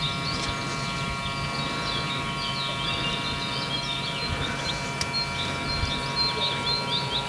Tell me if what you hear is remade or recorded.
recorded